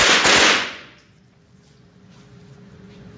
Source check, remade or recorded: remade